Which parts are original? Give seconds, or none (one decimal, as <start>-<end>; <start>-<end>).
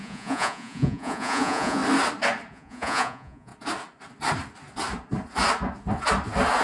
1.8-2.5; 3.5-6.6